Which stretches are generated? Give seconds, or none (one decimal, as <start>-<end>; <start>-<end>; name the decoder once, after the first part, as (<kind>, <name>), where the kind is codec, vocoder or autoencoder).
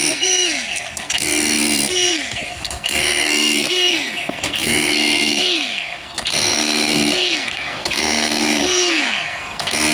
0.0-9.9 (codec, SNAC)